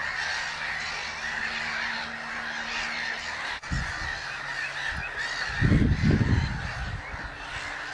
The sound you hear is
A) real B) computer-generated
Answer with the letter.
A